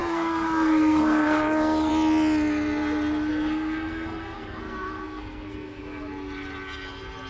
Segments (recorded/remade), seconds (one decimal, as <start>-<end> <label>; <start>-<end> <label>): 0.0-1.9 remade; 1.9-3.3 recorded; 3.3-5.8 remade; 5.8-7.3 recorded

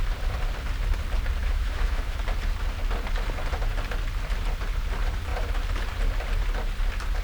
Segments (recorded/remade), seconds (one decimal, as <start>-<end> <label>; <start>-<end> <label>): 0.0-1.4 recorded; 1.4-2.2 remade; 2.2-7.2 recorded